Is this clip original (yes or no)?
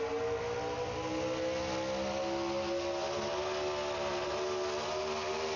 yes